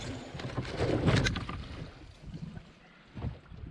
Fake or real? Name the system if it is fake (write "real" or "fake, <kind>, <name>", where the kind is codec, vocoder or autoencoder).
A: real